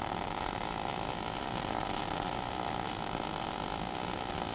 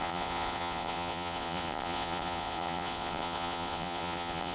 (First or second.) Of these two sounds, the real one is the first